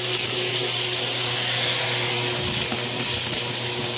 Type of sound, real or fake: real